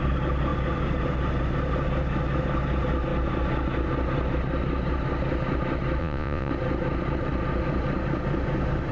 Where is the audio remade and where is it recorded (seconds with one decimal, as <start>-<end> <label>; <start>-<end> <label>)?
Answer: 0.0-6.0 recorded; 6.0-6.5 remade; 6.5-8.9 recorded